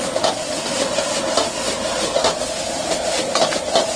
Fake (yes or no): no